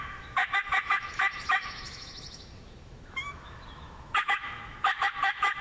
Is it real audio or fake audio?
fake